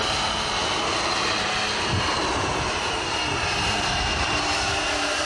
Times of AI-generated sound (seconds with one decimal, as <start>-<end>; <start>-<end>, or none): 0.0-0.6; 2.3-5.2